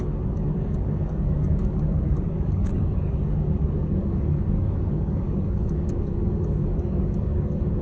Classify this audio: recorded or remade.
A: remade